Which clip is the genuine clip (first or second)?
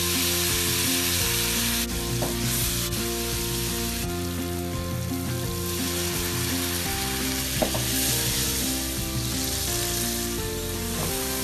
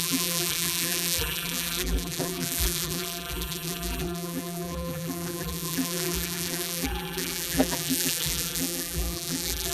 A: first